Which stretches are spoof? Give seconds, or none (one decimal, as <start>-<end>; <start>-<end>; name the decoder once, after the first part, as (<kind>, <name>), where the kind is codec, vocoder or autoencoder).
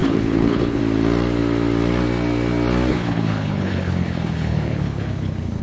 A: 0.0-0.8 (codec, HILCodec); 2.9-5.6